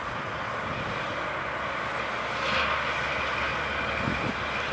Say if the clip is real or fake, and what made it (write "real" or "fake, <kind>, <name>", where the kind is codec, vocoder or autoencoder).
real